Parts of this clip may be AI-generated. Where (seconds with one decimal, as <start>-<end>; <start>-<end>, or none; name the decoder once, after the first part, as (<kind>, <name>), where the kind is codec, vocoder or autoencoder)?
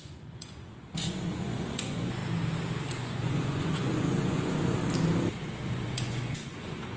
0.0-2.2 (vocoder, Vocos); 2.9-4.8; 5.7-7.0